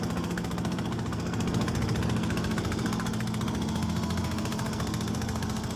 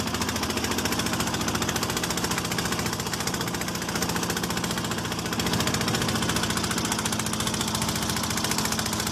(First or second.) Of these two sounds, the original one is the second